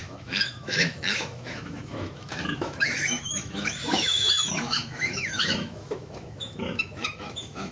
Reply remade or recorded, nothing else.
remade